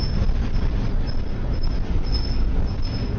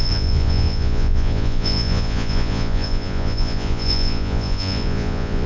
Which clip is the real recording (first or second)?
first